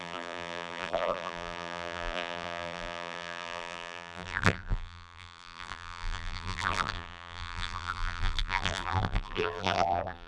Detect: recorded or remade remade